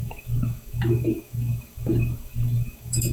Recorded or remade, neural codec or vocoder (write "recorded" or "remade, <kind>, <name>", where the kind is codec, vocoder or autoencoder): remade, autoencoder, DAC-VAE